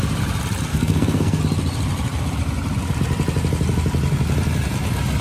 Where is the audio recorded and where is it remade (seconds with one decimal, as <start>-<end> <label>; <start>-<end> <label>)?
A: 0.0-0.7 recorded; 0.7-1.4 remade; 1.4-5.2 recorded